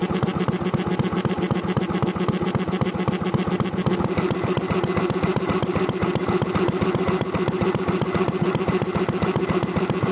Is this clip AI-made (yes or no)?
no